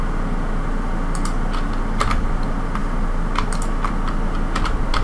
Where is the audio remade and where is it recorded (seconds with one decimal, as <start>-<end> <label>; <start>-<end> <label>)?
0.0-5.0 recorded